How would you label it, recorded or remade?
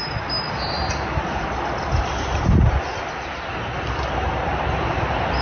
recorded